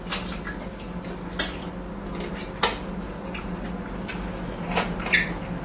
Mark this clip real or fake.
real